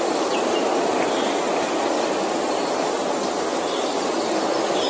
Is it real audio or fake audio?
real